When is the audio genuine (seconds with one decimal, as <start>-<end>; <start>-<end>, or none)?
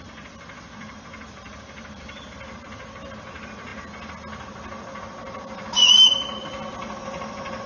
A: 0.0-7.7